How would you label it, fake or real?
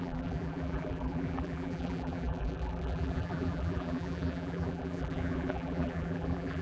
fake